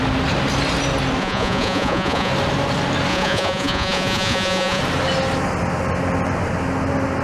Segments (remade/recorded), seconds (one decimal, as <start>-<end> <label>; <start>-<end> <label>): 0.0-1.2 recorded; 1.2-2.3 remade; 2.3-3.1 recorded; 3.1-4.8 remade; 4.8-7.2 recorded